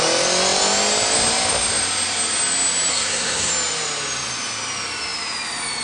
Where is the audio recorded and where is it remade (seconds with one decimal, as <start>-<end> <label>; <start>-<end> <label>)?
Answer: 0.0-2.9 recorded; 2.9-3.5 remade; 3.5-5.8 recorded